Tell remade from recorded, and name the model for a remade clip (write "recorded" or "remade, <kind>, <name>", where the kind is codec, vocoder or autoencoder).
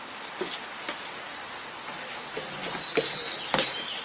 recorded